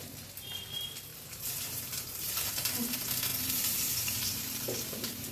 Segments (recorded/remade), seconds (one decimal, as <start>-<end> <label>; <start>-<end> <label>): 0.0-1.1 recorded; 1.1-2.5 remade; 2.5-3.3 recorded; 3.3-5.3 remade